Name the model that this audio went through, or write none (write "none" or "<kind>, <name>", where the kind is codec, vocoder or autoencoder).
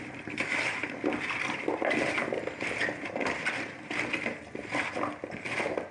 none